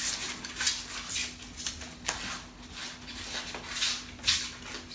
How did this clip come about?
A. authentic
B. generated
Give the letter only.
A